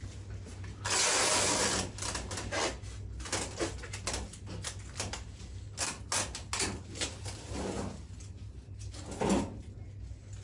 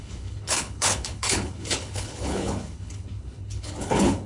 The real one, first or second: first